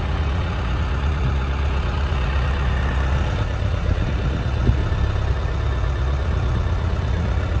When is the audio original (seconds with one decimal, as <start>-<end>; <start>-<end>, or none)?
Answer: 4.8-5.3